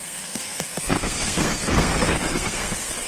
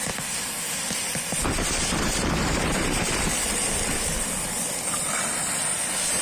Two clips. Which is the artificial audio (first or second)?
first